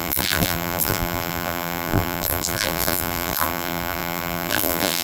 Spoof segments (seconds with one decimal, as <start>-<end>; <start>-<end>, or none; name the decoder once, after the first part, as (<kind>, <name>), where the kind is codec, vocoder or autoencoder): 0.0-5.0 (vocoder, BigVGAN v2)